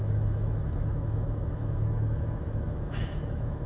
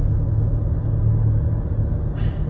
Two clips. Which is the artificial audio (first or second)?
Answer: first